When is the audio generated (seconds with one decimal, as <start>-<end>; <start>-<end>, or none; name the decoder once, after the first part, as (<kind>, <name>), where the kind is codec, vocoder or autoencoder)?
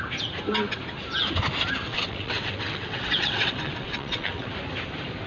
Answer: 1.9-4.5 (vocoder, WaveNeXt)